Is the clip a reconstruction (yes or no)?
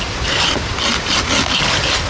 no